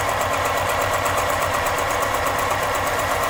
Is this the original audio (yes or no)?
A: no